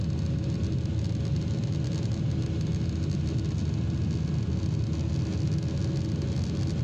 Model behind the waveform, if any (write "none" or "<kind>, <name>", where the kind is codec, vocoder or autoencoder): none